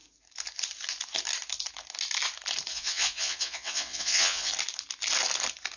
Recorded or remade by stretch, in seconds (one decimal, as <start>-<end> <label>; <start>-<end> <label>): 0.0-2.7 recorded; 2.7-4.5 remade; 4.5-5.8 recorded